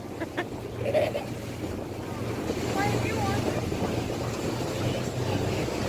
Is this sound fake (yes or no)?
no